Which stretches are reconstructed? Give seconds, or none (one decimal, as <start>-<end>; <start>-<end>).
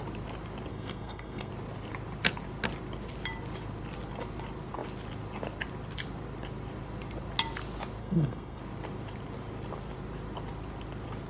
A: 0.7-1.5; 8.0-8.6